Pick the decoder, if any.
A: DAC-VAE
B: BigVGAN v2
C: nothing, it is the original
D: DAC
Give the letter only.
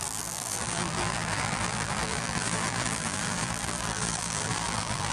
B